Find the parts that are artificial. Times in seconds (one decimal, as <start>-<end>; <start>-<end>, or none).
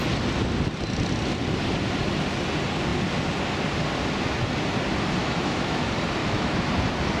5.2-5.8; 6.2-6.7